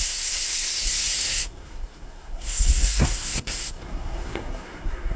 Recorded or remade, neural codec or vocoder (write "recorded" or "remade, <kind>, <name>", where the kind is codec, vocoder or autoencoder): remade, codec, SNAC